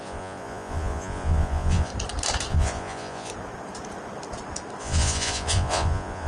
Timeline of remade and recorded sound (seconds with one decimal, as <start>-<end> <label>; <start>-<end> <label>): 0.0-1.9 remade; 1.9-2.5 recorded; 2.5-3.3 remade; 3.3-4.8 recorded; 4.8-6.3 remade